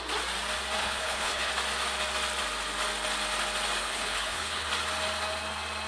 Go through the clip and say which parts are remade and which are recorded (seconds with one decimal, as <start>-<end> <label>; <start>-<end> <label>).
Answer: 0.0-0.8 recorded; 0.8-1.5 remade; 1.5-3.8 recorded; 3.8-4.7 remade; 4.7-5.9 recorded